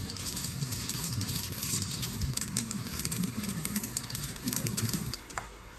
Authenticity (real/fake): fake